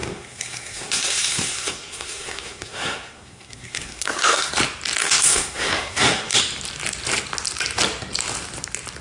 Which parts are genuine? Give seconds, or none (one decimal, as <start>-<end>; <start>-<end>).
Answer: 4.5-5.0; 6.4-9.0